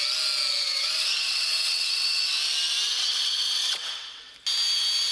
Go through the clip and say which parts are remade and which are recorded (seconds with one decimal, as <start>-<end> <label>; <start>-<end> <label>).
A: 0.0-0.6 recorded; 0.6-2.2 remade; 2.2-2.8 recorded; 2.8-4.3 remade; 4.3-5.1 recorded